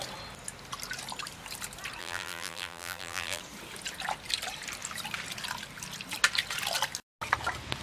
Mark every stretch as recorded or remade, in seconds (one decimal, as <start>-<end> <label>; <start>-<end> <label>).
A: 0.0-2.0 recorded; 2.0-3.4 remade; 3.4-7.8 recorded